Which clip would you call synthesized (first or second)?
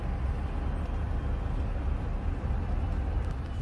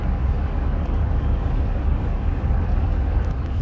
second